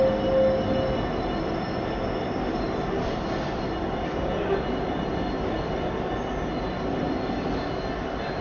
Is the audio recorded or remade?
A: recorded